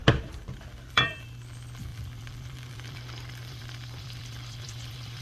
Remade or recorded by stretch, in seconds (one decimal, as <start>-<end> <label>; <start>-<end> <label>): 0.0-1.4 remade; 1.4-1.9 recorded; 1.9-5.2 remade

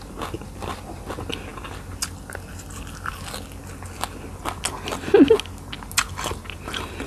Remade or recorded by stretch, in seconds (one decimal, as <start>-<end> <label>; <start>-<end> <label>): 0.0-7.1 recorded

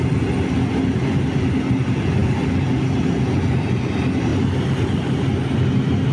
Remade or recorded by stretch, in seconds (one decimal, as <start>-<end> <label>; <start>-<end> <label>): 0.0-6.1 recorded

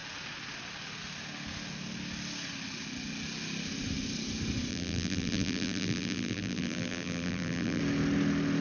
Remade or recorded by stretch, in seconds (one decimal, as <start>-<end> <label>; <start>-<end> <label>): 0.0-4.7 recorded; 4.7-7.8 remade; 7.8-8.6 recorded

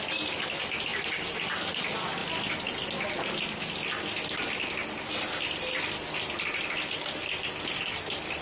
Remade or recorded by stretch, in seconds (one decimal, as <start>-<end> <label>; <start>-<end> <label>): 0.0-8.4 recorded